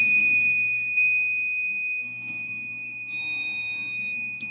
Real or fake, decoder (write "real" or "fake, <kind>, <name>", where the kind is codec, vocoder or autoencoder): fake, codec, SNAC